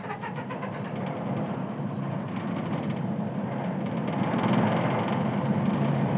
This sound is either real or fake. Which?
real